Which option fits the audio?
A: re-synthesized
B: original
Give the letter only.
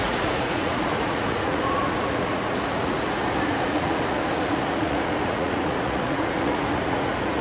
A